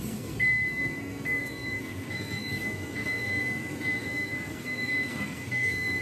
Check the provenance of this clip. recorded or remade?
remade